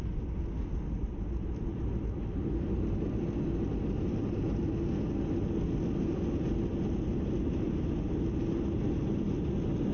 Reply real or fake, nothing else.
real